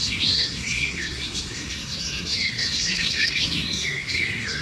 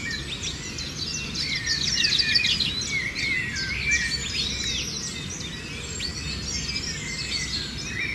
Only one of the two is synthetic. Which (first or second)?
first